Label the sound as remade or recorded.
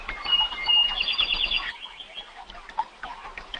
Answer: recorded